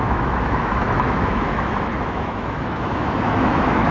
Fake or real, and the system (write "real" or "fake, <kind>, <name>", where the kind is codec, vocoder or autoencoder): fake, autoencoder, DAC-VAE